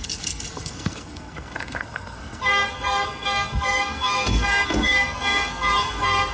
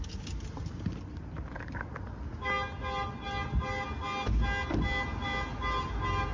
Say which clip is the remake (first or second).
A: first